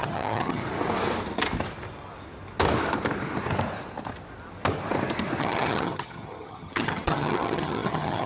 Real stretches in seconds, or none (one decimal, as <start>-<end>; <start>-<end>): 0.6-5.4

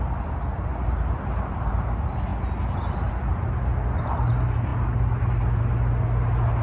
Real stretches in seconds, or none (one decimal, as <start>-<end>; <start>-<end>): 0.0-6.6

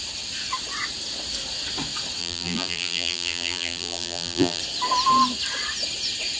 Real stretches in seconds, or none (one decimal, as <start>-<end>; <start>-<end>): 0.0-2.2; 4.6-6.4

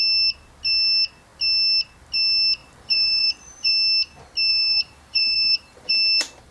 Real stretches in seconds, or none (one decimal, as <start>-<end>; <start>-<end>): 0.0-2.6; 3.7-4.5; 5.9-6.5

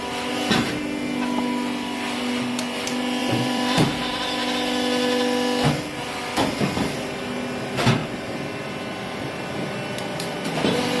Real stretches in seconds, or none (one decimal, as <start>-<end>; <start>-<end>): 0.0-3.2; 4.0-8.0

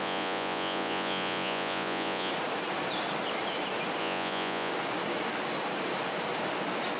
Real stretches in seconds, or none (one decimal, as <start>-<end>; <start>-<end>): 2.3-4.0; 4.7-7.0

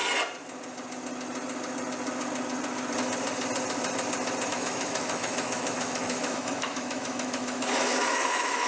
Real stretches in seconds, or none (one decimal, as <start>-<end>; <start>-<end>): 0.0-4.5